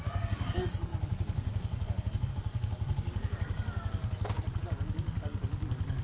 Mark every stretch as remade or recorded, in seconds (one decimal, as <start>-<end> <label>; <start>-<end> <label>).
0.0-4.0 remade; 4.0-4.6 recorded; 4.6-6.0 remade